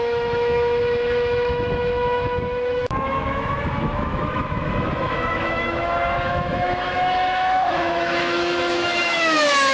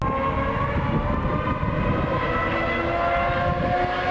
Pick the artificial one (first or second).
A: first